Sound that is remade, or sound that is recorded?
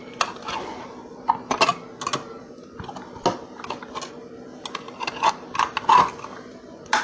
recorded